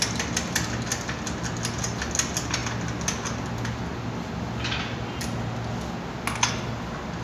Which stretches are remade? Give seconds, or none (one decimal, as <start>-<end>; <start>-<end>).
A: none